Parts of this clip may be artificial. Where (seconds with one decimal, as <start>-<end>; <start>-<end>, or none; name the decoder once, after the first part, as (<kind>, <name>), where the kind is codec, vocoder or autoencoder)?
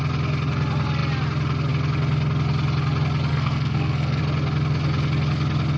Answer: 3.3-4.2 (codec, SNAC)